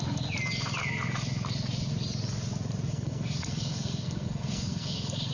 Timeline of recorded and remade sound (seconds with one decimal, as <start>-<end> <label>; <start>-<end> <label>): 0.0-2.9 recorded; 2.9-5.3 remade